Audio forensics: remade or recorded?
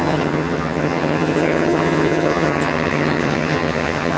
remade